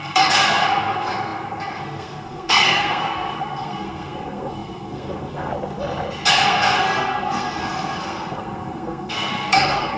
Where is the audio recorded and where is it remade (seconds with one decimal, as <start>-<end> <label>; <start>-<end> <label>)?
0.0-5.5 remade; 5.5-6.3 recorded; 6.3-10.0 remade